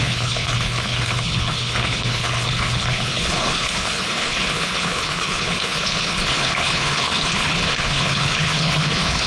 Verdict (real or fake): fake